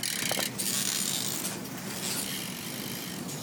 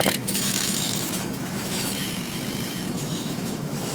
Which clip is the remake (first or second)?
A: second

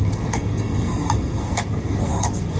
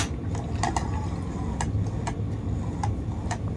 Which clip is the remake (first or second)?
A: first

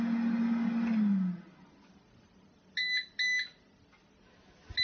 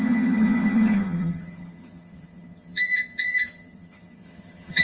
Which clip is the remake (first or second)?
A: second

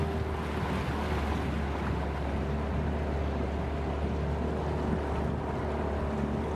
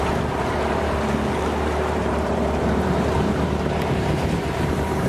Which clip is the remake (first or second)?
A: second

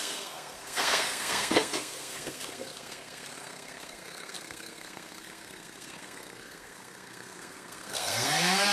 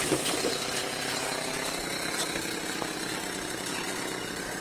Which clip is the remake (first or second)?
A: first